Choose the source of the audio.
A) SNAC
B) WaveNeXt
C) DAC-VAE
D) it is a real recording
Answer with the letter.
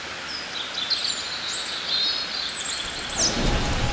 D